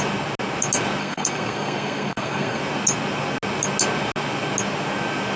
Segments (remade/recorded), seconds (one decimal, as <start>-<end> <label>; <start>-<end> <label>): 0.0-1.0 recorded; 1.0-2.6 remade; 2.6-5.4 recorded